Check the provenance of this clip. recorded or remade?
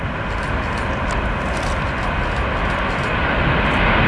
recorded